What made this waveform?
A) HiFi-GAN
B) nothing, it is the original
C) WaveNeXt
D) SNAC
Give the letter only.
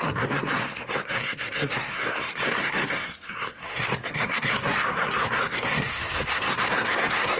D